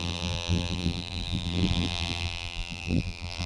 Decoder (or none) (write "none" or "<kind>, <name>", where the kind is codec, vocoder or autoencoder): vocoder, BigVGAN v2